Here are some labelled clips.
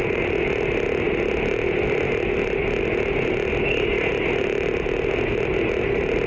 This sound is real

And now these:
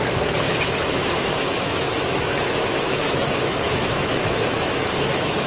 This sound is fake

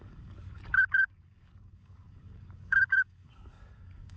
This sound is fake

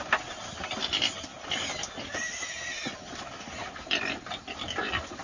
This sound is real